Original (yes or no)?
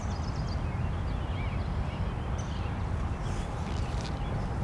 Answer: yes